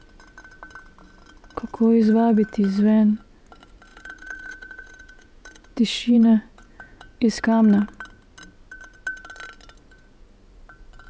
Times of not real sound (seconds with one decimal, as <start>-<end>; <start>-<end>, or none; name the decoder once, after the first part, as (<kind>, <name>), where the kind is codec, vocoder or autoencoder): 3.9-7.4 (vocoder, Vocos)